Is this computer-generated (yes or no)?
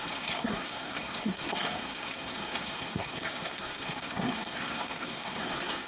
yes